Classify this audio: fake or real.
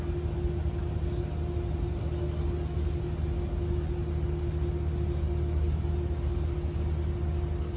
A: real